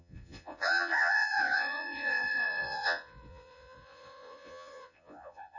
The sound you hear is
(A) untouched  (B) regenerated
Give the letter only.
B